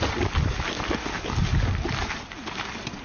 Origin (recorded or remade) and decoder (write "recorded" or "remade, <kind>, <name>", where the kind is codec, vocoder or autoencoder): recorded